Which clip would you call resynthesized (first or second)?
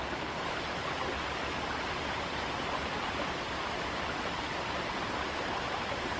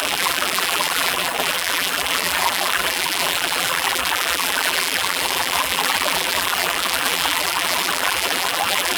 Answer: second